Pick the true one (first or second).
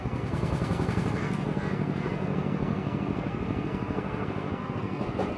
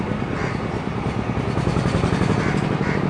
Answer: second